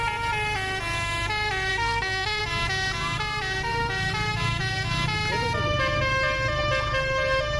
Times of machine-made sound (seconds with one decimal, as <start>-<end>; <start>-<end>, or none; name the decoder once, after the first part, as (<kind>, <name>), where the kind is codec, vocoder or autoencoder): 1.7-2.4 (codec, SNAC)